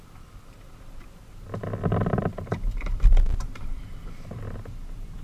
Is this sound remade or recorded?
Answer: remade